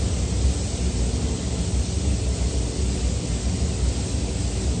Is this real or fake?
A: real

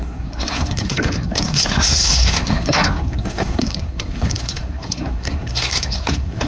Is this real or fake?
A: fake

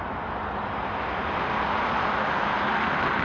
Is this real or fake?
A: real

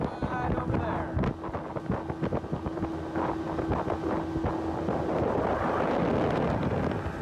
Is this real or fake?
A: real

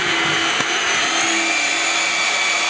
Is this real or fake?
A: real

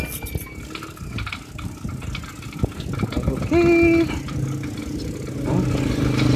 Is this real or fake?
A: real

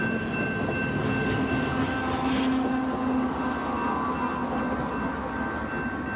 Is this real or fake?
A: real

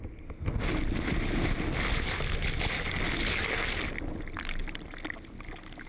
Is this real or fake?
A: real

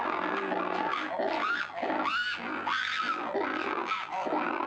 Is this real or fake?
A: fake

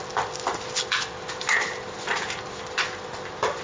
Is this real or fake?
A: real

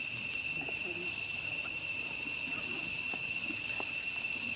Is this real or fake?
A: real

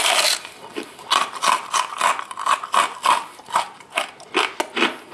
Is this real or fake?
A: real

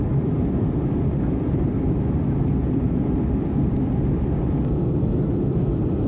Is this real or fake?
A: fake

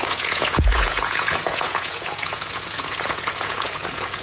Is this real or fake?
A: fake